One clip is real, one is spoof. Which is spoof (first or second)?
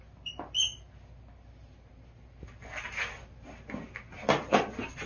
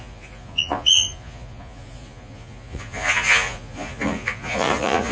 second